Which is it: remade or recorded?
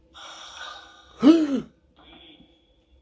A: recorded